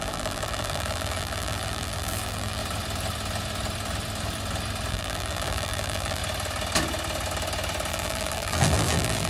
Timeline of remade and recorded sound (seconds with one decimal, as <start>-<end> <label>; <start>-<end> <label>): 0.0-2.6 remade; 2.6-4.9 recorded; 4.9-6.2 remade; 6.2-7.9 recorded; 7.9-9.3 remade